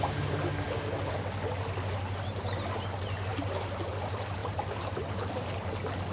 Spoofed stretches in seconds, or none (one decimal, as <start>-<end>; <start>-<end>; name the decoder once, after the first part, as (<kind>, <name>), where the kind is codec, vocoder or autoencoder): 4.4-5.3 (vocoder, BigVGAN v2)

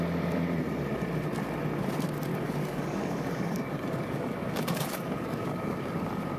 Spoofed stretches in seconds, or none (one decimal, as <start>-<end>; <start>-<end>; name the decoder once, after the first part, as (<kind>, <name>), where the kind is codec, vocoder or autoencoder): 2.3-6.4 (codec, DAC)

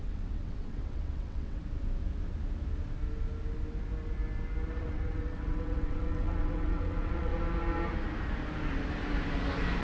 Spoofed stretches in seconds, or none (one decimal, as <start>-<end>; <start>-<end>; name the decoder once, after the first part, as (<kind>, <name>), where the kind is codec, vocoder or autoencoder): 0.0-1.6 (vocoder, WaveNeXt); 4.8-7.3